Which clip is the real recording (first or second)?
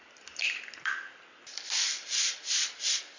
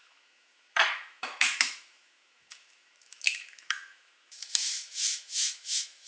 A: first